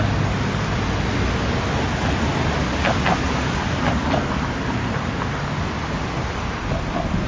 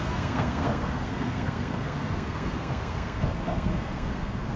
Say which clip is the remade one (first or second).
second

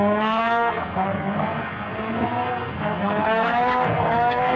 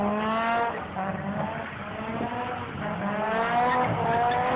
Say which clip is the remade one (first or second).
first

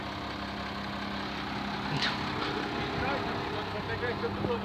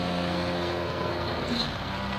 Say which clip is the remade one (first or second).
second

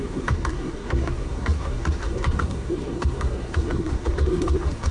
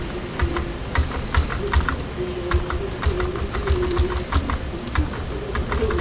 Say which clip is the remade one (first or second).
first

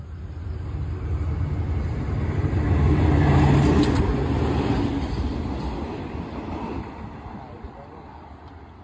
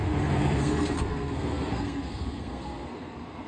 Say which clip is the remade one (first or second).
second